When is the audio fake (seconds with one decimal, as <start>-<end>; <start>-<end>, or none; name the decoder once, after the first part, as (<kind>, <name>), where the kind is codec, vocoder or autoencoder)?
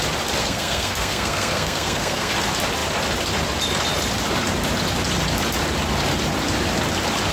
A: 0.4-2.3 (codec, SNAC)